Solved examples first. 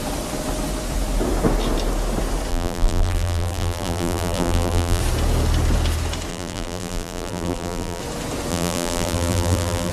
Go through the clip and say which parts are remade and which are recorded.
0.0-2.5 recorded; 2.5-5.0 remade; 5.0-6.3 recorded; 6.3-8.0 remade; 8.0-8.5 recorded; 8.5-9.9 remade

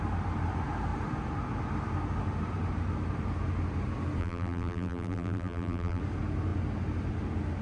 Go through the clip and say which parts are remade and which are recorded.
0.0-4.2 recorded; 4.2-6.0 remade; 6.0-7.6 recorded

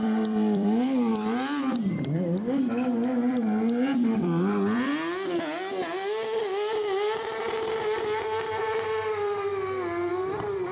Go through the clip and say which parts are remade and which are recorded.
0.0-4.9 remade; 4.9-8.7 recorded; 8.7-10.7 remade